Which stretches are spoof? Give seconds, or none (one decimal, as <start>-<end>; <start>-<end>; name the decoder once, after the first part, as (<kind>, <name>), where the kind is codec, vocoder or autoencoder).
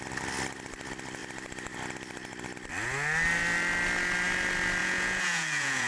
4.8-5.9 (vocoder, Vocos)